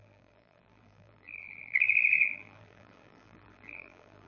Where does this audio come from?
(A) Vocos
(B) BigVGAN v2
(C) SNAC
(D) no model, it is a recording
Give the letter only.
B